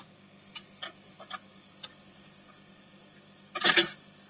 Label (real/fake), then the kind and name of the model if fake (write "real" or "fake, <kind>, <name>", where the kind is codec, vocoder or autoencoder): real